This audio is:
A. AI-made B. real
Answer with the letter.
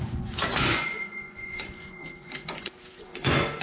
A